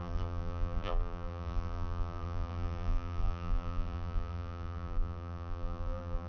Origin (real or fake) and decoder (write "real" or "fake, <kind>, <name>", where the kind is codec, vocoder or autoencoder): fake, vocoder, BigVGAN v2